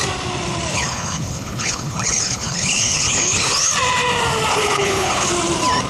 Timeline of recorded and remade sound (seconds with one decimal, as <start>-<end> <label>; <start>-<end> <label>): 0.0-0.7 recorded; 0.7-3.7 remade; 3.7-4.5 recorded; 4.5-5.3 remade; 5.3-5.9 recorded